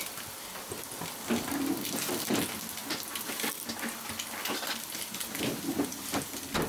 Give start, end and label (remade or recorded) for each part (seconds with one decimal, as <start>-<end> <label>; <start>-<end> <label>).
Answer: 0.0-6.7 recorded